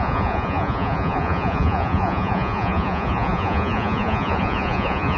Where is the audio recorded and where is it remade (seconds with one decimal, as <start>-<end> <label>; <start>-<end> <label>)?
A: 0.0-5.2 remade